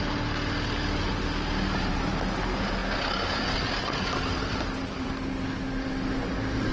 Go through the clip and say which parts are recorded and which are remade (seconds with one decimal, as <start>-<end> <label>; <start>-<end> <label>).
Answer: 0.0-6.7 recorded